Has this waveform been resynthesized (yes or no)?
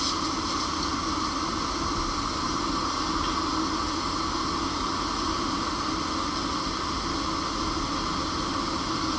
no